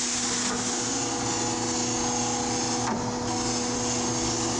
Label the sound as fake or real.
real